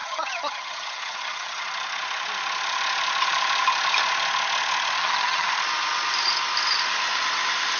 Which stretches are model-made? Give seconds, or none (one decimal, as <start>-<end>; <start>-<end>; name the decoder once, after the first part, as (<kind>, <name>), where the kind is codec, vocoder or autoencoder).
0.0-1.6 (vocoder, HiFi-GAN); 5.0-5.5